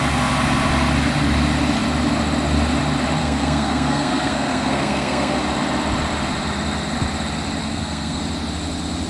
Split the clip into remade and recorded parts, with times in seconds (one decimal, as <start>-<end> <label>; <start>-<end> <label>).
0.0-3.2 recorded; 3.2-5.4 remade; 5.4-7.6 recorded; 7.6-8.2 remade; 8.2-9.1 recorded